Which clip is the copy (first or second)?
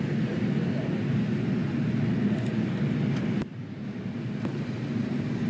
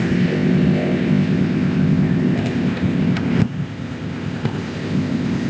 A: second